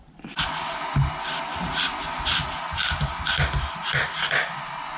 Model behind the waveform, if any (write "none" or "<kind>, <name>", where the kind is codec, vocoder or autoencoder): none